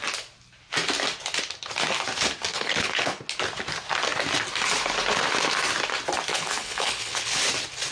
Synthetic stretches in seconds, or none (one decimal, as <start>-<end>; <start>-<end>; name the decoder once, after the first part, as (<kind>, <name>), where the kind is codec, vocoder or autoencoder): 2.5-3.2 (codec, HILCodec); 6.3-7.4